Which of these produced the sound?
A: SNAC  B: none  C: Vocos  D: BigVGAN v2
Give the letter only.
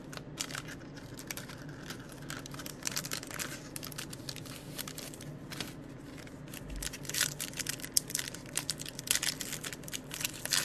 B